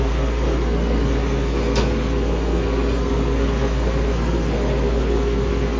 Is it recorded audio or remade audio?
remade